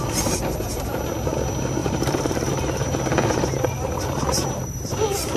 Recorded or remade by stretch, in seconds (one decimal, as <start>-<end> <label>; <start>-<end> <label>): 0.0-1.8 recorded; 1.8-5.0 remade; 5.0-5.4 recorded